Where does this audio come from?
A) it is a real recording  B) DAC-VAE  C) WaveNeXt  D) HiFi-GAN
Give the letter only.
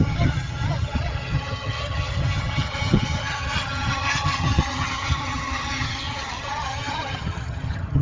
D